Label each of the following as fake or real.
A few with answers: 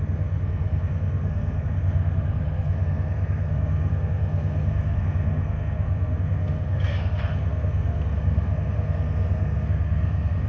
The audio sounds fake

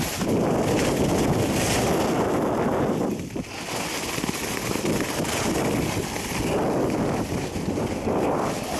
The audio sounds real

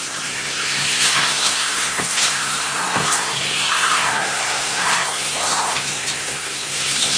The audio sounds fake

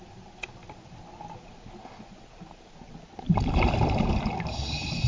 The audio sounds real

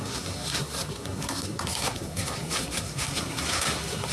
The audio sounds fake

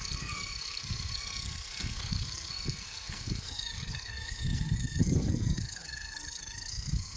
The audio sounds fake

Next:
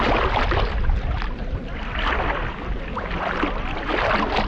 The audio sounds real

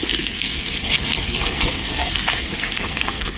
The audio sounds fake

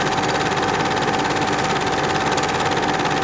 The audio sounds real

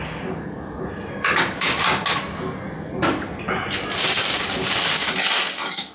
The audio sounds real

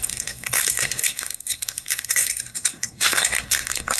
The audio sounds fake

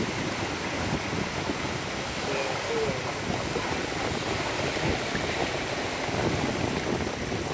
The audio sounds real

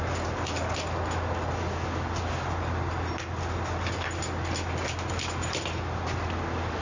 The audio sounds real